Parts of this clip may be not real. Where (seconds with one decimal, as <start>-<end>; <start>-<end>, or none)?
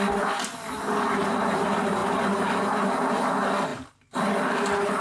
none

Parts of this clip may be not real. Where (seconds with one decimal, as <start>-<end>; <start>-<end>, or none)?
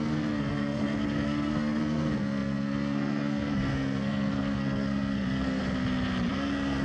0.0-5.6; 6.3-6.8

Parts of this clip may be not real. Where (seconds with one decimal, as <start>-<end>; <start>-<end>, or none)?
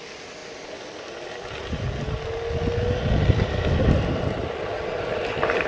none